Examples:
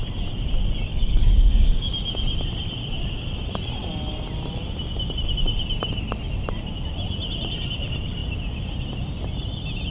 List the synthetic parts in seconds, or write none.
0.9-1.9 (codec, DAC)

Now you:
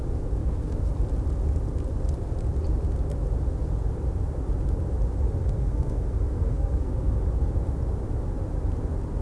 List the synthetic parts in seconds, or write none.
0.4-0.9 (codec, SNAC); 5.4-7.2

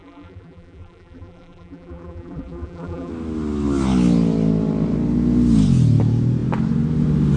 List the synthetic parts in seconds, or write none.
0.0-3.1 (vocoder, BigVGAN v2)

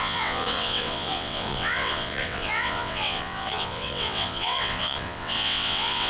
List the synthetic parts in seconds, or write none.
0.0-6.1 (vocoder, WaveNeXt)

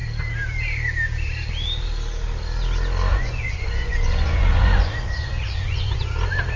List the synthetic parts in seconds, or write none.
3.1-6.0 (vocoder, Vocos)